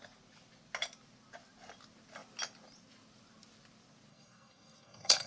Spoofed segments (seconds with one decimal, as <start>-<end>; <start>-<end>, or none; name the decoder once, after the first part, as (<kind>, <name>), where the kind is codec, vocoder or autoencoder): 4.1-5.3 (codec, SNAC)